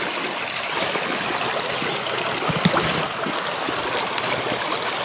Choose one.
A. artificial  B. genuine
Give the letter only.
B